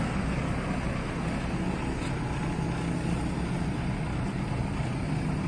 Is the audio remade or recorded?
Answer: recorded